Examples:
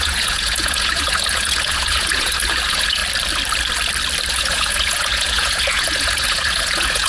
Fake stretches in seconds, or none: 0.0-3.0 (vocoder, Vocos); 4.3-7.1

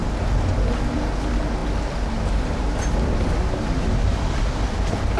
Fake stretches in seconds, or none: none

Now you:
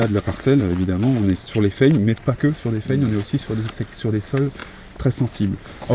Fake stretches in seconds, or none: 0.0-2.4 (vocoder, WaveNeXt)

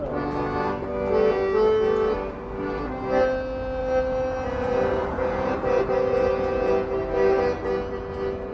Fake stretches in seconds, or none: 3.8-6.7 (vocoder, BigVGAN v2)

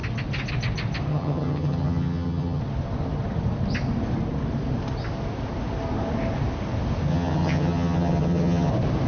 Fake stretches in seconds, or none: 1.1-2.6 (vocoder, HiFi-GAN); 7.1-8.7

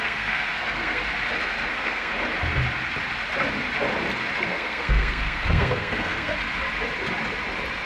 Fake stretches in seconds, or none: 0.0-1.0 (codec, SNAC); 1.7-2.1; 4.5-6.3

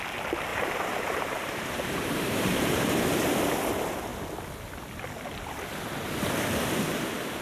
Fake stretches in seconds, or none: 0.5-3.4 (vocoder, BigVGAN v2)